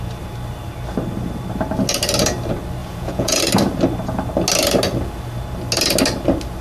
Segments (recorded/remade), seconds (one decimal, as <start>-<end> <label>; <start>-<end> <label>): 0.0-2.8 recorded; 2.8-3.4 remade; 3.4-6.6 recorded